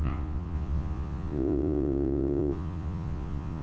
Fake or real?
fake